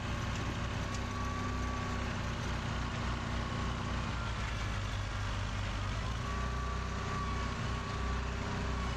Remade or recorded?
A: recorded